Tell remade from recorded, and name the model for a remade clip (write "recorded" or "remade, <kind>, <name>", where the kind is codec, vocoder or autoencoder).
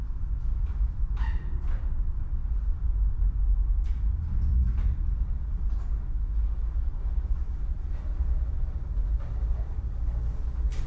recorded